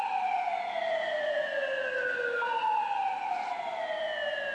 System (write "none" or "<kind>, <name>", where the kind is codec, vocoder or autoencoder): none